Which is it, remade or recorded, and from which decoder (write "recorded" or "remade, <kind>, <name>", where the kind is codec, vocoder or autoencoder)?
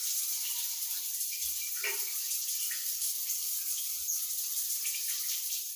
remade, vocoder, BigVGAN v2